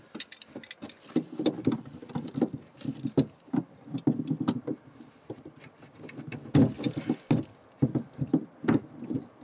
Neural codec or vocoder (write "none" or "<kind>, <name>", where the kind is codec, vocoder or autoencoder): none